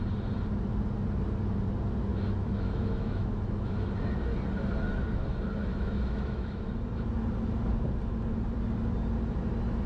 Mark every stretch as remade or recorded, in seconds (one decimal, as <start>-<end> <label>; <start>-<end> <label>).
0.0-2.1 recorded; 2.1-3.9 remade; 3.9-5.7 recorded; 5.7-6.7 remade; 6.7-9.9 recorded